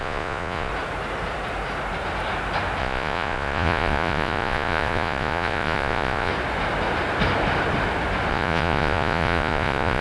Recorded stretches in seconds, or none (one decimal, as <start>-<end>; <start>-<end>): 0.7-2.8; 6.3-8.3